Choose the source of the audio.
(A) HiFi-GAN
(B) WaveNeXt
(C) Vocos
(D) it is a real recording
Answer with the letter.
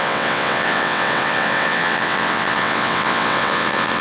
B